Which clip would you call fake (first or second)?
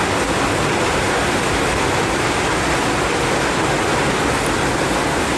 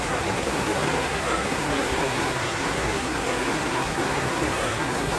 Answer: second